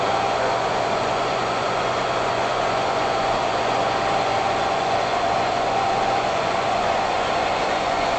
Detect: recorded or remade remade